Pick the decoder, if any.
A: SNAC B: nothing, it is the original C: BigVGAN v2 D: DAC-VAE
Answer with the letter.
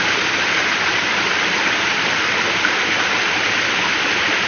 B